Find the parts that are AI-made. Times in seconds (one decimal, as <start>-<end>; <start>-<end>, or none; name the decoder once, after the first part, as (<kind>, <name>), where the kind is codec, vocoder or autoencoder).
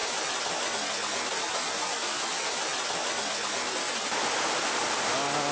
none